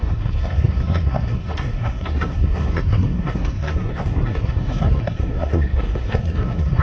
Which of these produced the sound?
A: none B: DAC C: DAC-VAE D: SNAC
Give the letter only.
D